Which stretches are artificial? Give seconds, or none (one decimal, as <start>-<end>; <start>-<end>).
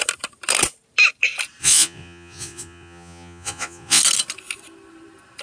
1.6-4.0